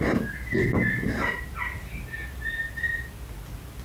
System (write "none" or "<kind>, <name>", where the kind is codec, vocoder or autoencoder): none